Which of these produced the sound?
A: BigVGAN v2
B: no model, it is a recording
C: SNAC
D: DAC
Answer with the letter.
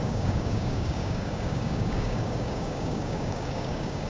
D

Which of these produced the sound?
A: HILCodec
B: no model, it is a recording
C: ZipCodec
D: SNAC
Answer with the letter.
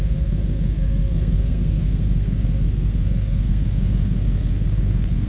D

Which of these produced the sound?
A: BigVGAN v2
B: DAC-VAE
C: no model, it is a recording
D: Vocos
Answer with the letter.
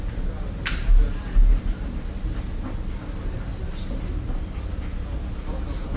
C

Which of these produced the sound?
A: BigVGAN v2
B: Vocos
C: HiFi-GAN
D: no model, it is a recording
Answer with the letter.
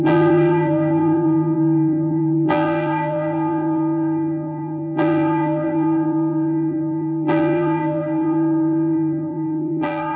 A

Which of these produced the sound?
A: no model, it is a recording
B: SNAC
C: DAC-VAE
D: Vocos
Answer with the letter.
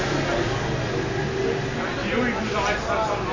A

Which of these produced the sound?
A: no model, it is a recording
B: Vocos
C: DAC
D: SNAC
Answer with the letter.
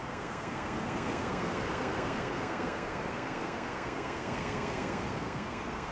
D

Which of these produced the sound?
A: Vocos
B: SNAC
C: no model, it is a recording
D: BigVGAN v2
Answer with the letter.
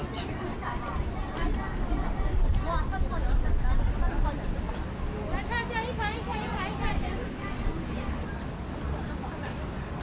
C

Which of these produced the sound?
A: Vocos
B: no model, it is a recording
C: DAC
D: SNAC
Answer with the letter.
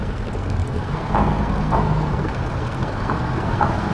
D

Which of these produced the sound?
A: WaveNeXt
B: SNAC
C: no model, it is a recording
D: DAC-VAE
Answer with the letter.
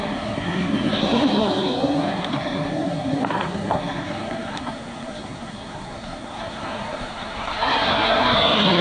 B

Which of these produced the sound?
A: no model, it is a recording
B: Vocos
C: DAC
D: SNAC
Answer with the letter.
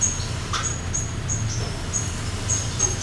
A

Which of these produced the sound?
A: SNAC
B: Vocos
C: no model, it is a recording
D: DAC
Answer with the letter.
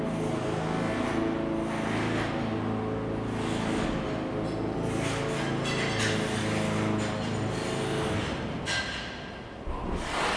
C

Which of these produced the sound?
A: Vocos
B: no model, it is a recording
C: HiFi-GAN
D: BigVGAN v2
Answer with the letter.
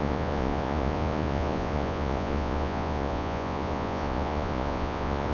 A